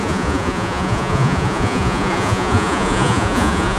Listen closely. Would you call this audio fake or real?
fake